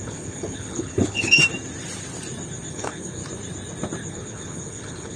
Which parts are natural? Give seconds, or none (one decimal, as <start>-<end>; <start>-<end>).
1.4-2.7; 3.2-4.1